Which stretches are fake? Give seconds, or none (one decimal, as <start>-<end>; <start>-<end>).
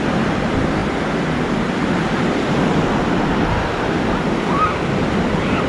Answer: none